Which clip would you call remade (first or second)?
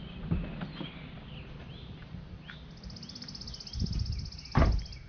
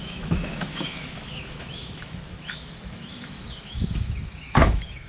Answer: second